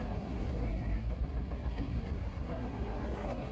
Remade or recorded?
remade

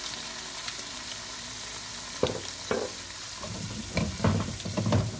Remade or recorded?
recorded